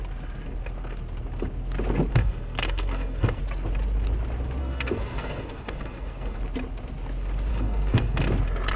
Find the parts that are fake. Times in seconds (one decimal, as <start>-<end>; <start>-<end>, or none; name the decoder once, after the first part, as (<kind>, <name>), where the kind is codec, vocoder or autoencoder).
2.1-3.4 (codec, SNAC); 4.6-6.4; 7.5-8.2